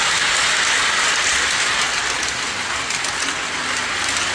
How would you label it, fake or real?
real